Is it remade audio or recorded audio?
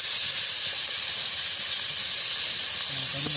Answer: recorded